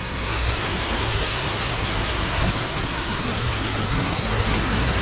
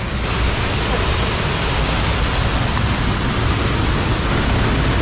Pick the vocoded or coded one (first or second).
first